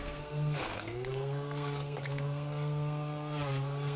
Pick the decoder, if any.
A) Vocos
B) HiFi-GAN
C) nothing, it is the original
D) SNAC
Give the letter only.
D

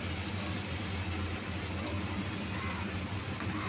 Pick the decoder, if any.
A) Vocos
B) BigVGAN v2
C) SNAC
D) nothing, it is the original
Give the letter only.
D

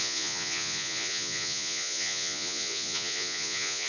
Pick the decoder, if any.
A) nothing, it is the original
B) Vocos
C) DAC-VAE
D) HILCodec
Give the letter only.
B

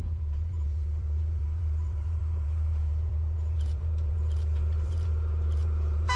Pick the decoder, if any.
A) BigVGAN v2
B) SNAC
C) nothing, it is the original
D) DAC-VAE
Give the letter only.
A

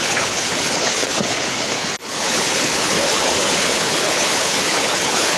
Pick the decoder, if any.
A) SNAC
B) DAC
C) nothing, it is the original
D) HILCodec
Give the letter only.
D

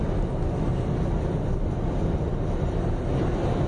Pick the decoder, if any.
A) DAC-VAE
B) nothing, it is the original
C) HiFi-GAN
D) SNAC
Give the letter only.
B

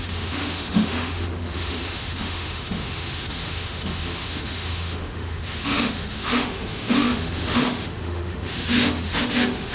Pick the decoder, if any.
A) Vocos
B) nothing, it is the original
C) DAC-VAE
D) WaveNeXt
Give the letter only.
C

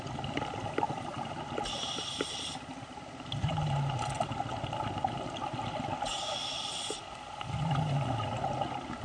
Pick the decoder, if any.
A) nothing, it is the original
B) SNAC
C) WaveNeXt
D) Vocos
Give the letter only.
A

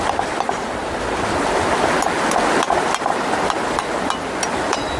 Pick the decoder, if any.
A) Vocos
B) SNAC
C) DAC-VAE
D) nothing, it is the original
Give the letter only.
D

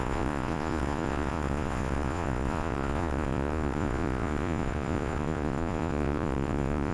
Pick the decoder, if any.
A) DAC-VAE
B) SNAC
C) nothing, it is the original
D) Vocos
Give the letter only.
D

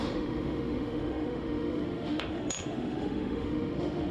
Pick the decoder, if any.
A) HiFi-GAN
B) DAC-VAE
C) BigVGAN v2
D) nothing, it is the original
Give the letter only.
B